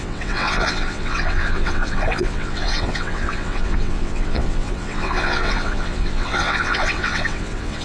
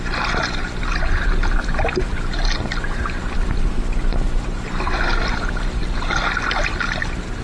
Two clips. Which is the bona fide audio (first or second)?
second